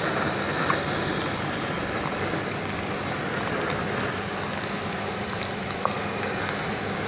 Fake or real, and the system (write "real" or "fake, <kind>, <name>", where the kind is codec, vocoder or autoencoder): real